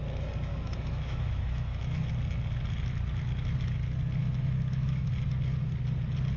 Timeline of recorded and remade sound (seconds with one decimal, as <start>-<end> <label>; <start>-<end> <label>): 0.0-0.5 recorded; 0.5-2.1 remade; 2.1-4.2 recorded; 4.2-5.1 remade; 5.1-6.4 recorded